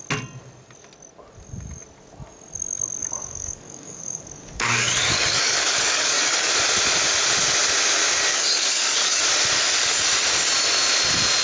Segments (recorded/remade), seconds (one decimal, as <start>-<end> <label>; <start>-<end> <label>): 0.0-3.0 recorded; 3.0-6.5 remade; 6.5-8.3 recorded; 8.3-9.2 remade; 9.2-11.4 recorded